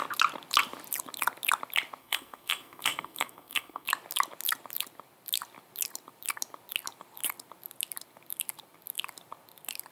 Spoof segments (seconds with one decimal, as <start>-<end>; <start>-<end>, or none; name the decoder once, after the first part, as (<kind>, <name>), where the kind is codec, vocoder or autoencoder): 2.0-3.9 (codec, SNAC)